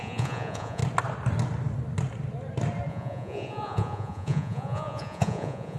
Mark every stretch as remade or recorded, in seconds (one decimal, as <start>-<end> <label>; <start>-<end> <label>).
0.0-0.8 remade; 0.8-2.9 recorded; 2.9-5.8 remade